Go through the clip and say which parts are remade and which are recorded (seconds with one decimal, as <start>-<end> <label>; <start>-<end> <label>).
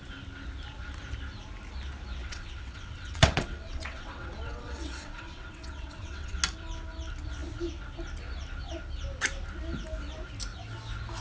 0.0-2.2 recorded; 2.2-6.3 remade; 6.3-11.2 recorded